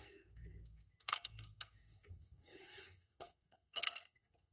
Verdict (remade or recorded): remade